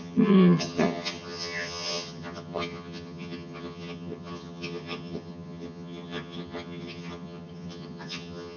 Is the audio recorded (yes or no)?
no